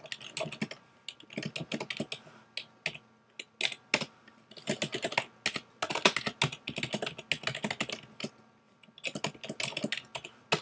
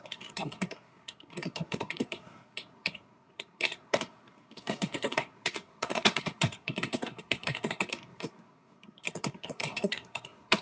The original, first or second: first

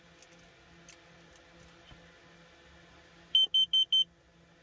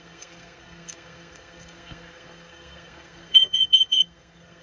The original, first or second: first